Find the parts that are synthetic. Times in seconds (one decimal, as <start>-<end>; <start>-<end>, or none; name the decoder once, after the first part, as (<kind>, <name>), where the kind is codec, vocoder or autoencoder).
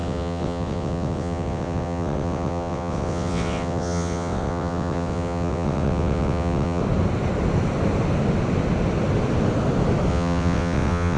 0.0-6.8 (vocoder, WaveNeXt); 10.1-11.2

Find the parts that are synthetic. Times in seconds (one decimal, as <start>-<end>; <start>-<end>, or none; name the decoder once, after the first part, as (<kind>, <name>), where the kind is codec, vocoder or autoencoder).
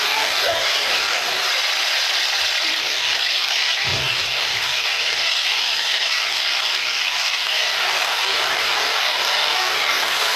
0.0-1.5 (codec, DAC); 2.8-10.4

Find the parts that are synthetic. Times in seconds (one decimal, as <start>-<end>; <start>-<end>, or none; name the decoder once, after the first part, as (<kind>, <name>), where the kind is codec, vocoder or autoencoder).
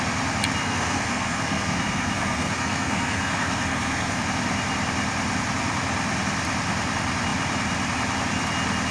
0.6-4.2 (codec, SNAC)